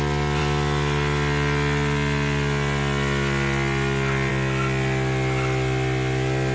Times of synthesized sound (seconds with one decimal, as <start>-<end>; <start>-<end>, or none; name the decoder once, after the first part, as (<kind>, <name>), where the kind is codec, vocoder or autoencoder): none